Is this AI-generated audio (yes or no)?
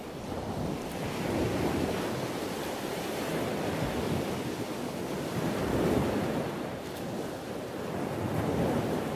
no